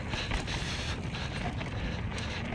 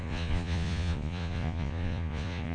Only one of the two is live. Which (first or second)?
first